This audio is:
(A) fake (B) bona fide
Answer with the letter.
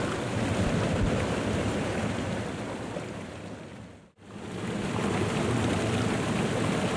A